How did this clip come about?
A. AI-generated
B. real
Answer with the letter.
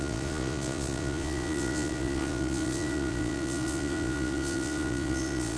A